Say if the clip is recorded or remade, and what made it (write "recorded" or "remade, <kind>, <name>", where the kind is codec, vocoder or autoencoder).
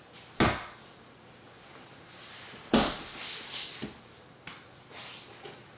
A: recorded